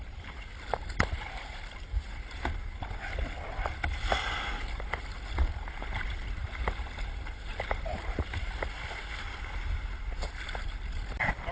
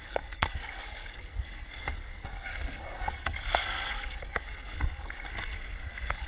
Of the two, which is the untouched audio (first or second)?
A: first